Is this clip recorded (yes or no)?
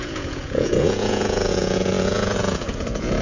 no